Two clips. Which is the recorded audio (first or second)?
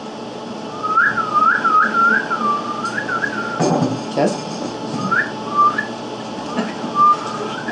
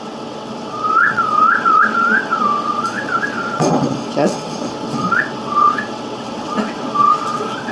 first